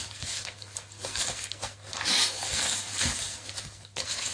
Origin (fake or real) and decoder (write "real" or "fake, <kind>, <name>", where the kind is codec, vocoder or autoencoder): fake, codec, SNAC